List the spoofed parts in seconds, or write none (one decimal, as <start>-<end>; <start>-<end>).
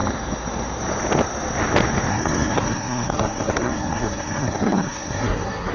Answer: 2.1-5.7